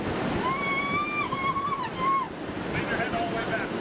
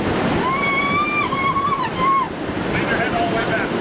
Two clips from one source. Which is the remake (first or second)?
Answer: second